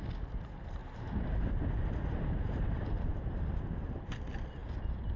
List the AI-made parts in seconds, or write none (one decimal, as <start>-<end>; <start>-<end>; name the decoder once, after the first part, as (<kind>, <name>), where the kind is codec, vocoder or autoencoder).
0.8-3.9 (vocoder, BigVGAN v2)